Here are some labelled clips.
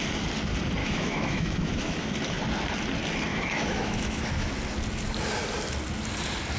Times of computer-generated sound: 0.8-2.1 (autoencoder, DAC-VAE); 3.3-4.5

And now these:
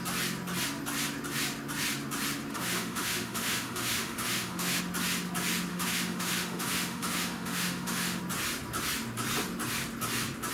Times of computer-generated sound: 2.5-4.8 (autoencoder, DAC-VAE); 5.7-8.2